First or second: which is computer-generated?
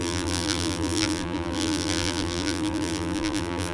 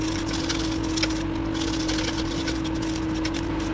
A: first